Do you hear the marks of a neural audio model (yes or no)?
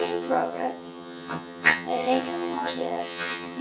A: yes